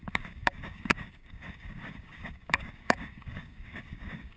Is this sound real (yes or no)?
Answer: no